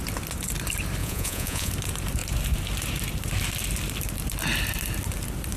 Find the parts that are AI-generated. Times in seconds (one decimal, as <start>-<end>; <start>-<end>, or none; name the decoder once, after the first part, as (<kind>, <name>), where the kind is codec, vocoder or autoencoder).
1.0-1.7 (vocoder, Vocos)